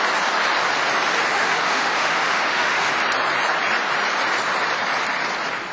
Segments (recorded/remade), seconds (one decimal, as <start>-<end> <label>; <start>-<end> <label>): 0.0-1.3 recorded; 1.3-2.9 remade; 2.9-5.7 recorded